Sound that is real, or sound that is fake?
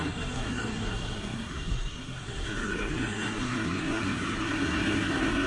fake